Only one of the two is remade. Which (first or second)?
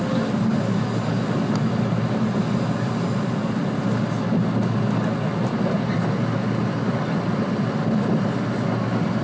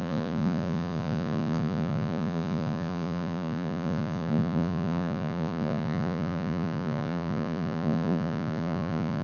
second